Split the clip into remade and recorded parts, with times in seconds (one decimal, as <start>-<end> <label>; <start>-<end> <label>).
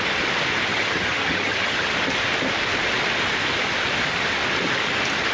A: 0.0-0.7 recorded; 0.7-1.9 remade; 1.9-5.3 recorded